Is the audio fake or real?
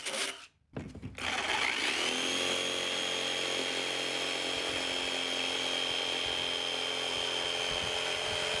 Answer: real